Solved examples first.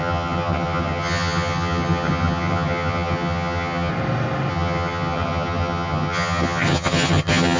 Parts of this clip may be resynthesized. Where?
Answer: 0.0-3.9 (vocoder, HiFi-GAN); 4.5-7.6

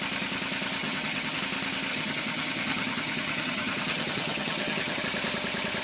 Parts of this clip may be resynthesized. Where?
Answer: 0.8-1.4 (vocoder, HiFi-GAN); 1.9-5.0

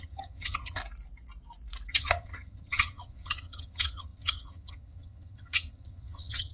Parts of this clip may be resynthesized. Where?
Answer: 0.0-0.8 (vocoder, HiFi-GAN); 1.9-6.5

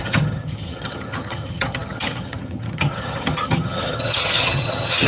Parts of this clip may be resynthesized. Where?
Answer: 0.0-5.1 (vocoder, HiFi-GAN)

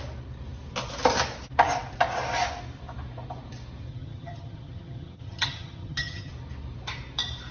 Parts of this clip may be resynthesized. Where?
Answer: 3.9-6.3 (vocoder, HiFi-GAN)

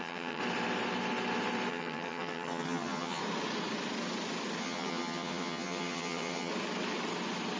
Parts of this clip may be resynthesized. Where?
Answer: 0.0-0.4 (vocoder, HiFi-GAN); 1.7-3.2; 4.6-6.5